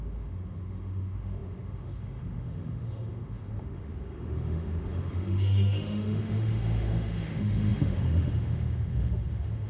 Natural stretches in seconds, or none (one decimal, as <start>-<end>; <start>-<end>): none